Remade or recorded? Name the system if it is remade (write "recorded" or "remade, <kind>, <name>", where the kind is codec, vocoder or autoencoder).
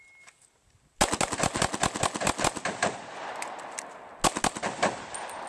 recorded